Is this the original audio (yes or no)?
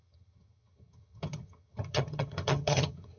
no